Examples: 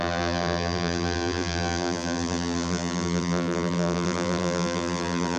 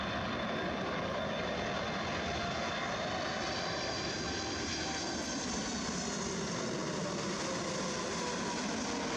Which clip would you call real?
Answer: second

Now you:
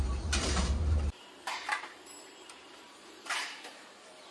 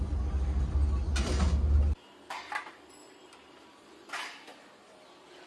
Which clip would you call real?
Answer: second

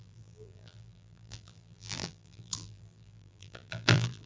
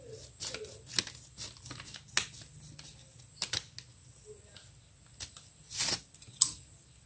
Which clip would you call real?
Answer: second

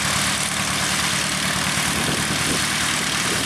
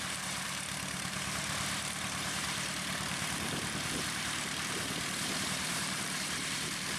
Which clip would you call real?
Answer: first